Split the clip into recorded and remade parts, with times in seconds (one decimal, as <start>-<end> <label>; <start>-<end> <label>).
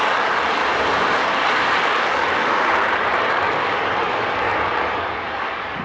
0.0-0.6 remade; 0.6-1.2 recorded; 1.2-5.8 remade